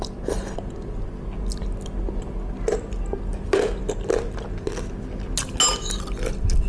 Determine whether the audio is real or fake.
real